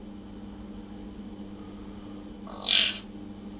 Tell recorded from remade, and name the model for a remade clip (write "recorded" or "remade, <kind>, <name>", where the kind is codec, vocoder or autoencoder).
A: recorded